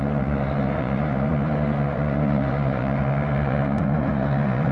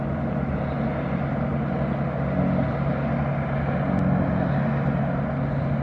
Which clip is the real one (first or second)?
second